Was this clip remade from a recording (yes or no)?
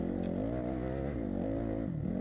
no